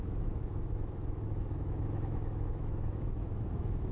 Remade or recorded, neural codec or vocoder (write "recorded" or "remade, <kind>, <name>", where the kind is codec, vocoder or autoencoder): remade, autoencoder, DAC-VAE